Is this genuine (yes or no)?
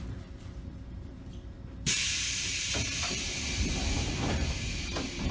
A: no